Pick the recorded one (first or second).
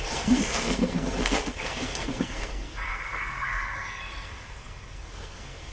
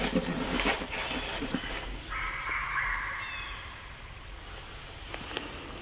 second